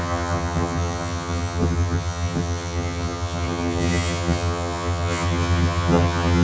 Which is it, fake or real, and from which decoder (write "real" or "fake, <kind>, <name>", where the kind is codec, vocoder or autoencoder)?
fake, vocoder, HiFi-GAN